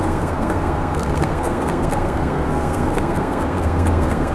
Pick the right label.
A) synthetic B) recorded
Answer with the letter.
A